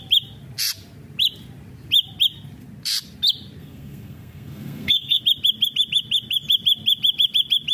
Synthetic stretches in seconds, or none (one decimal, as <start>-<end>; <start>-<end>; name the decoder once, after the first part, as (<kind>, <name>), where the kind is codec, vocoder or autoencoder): 3.6-5.2 (codec, SNAC)